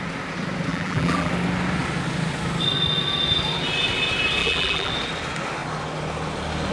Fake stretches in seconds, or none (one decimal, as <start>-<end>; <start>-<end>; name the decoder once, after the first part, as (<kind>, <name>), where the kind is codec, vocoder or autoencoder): 0.7-1.3 (vocoder, BigVGAN v2); 4.4-4.9